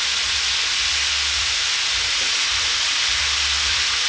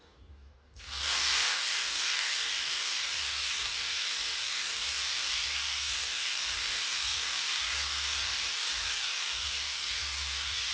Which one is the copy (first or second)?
second